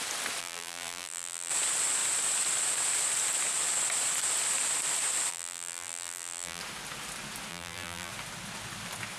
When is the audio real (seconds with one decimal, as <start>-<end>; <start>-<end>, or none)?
0.0-0.4; 1.5-5.3; 6.6-7.5; 8.1-9.2